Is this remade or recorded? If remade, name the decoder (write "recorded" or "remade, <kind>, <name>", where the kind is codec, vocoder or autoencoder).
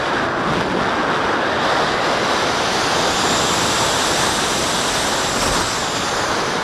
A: recorded